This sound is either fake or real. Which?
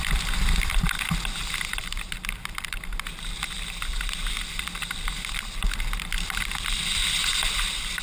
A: fake